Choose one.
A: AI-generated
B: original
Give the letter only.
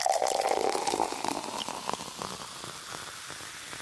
B